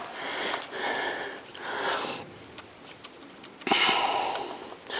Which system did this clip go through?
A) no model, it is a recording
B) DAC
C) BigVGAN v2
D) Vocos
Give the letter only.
A